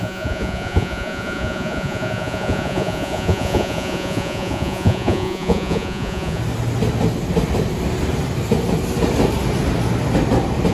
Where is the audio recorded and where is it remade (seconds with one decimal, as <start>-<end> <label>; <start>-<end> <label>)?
0.0-6.4 remade; 6.4-10.7 recorded

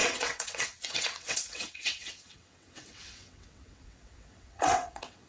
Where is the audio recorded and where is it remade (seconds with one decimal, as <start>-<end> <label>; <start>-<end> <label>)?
0.0-5.3 remade

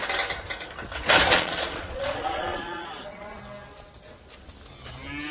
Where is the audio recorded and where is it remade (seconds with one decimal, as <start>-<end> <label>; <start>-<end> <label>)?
0.0-1.3 recorded; 1.3-3.4 remade; 3.4-5.3 recorded